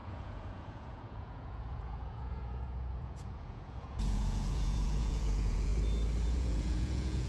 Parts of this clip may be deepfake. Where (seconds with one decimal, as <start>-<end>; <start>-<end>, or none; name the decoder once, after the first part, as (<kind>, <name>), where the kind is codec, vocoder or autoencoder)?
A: 0.0-5.7 (vocoder, Vocos); 6.3-7.3